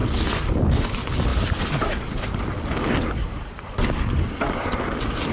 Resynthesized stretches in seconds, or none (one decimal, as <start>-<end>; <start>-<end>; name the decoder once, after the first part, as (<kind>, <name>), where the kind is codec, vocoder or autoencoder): 1.3-2.3 (vocoder, BigVGAN v2); 3.2-3.8